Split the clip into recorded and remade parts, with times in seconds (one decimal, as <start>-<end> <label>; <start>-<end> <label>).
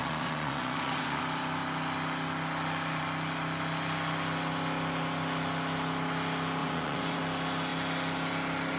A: 0.0-1.2 remade; 1.2-6.6 recorded; 6.6-7.2 remade; 7.2-8.8 recorded